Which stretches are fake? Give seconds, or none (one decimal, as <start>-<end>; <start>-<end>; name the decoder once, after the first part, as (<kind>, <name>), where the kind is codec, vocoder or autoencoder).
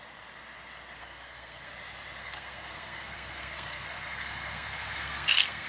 1.0-1.7 (codec, SNAC); 2.2-5.7